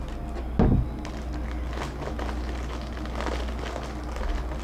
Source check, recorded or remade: recorded